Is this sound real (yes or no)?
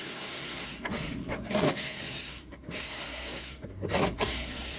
no